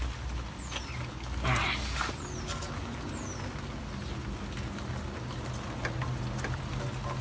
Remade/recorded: recorded